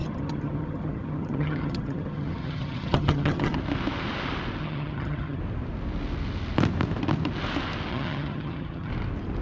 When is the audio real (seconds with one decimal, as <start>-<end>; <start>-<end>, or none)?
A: 3.6-4.6; 5.4-7.9; 8.9-9.4